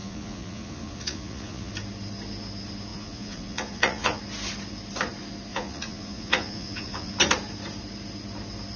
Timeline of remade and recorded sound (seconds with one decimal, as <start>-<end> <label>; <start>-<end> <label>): 0.0-1.7 remade; 1.7-2.9 recorded; 2.9-4.2 remade; 4.2-5.5 recorded; 5.5-7.1 remade; 7.1-8.8 recorded